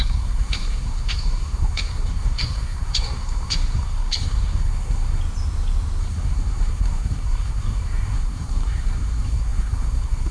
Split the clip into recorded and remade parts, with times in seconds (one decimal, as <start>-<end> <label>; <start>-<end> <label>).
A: 0.0-5.2 remade; 5.2-6.0 recorded; 6.0-10.3 remade